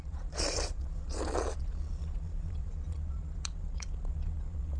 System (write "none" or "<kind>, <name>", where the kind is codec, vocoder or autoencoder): vocoder, Vocos